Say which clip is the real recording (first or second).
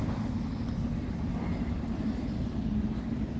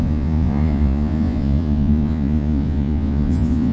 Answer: first